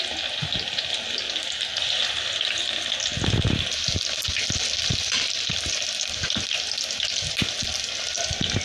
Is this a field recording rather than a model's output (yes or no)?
yes